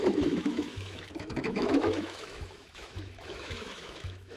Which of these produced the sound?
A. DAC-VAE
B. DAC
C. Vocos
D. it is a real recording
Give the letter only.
A